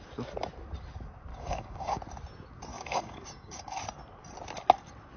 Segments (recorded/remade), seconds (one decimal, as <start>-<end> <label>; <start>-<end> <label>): 0.0-1.3 recorded; 1.3-2.0 remade; 2.0-2.7 recorded; 2.7-3.8 remade; 3.8-5.2 recorded